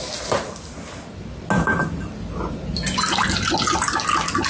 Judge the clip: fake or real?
real